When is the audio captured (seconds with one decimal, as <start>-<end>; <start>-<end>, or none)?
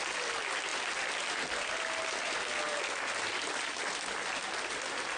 0.0-5.2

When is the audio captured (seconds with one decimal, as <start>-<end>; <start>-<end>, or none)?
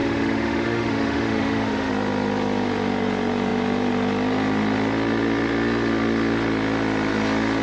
1.9-7.6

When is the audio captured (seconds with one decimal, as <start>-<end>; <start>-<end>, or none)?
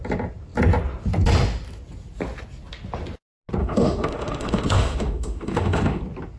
0.0-3.6; 6.0-6.4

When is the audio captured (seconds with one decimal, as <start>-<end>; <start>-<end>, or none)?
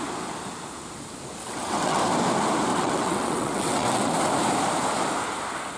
0.0-1.4; 2.0-2.7; 4.1-5.8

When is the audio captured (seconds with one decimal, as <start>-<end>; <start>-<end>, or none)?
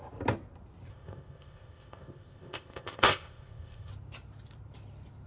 0.0-0.9; 3.9-5.3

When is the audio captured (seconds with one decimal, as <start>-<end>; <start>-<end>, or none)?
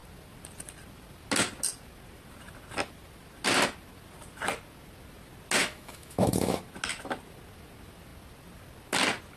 0.0-5.6; 6.6-9.4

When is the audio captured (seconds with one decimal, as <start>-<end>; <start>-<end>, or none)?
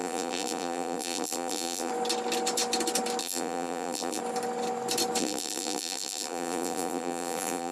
1.9-3.2; 4.2-5.2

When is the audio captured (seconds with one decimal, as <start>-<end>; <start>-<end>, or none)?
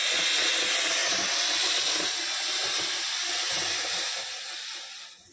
0.0-5.3